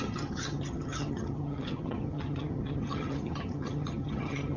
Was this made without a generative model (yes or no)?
no